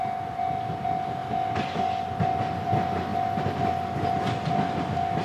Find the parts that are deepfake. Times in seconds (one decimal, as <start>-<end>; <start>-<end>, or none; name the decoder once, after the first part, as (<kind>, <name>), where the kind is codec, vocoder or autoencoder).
none